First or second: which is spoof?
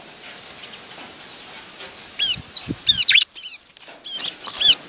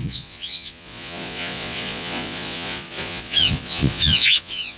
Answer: second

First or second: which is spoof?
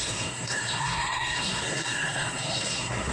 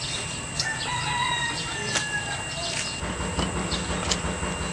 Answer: first